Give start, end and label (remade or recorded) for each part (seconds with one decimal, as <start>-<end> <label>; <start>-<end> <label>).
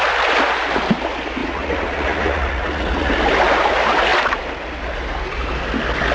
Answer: 0.0-1.4 recorded; 1.4-3.1 remade; 3.1-6.1 recorded